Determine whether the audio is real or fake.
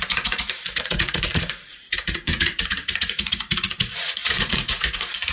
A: fake